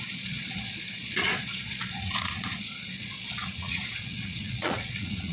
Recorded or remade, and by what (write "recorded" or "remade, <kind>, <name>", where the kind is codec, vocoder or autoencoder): remade, vocoder, Vocos